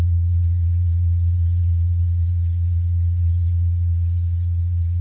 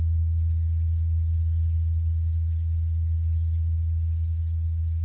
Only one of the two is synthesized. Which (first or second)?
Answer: first